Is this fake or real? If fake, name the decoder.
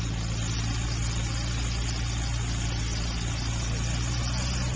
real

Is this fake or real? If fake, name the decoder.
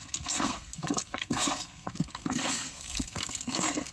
fake, codec, SNAC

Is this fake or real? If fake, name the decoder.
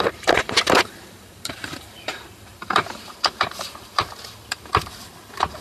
fake, vocoder, BigVGAN v2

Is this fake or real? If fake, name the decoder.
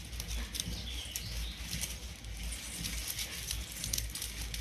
real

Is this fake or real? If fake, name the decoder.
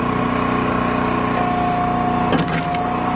real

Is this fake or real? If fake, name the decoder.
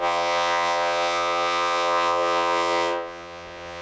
fake, vocoder, Vocos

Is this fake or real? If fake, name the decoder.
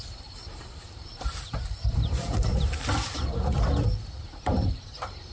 fake, vocoder, BigVGAN v2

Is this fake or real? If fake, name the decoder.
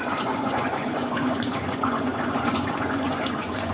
fake, vocoder, Vocos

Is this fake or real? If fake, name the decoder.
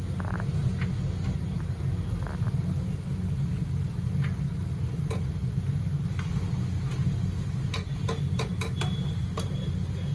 real